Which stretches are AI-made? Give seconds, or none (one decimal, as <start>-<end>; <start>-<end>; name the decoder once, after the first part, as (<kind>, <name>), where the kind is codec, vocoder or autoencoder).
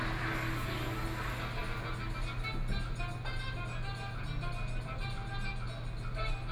none